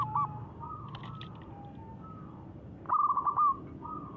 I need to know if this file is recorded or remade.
recorded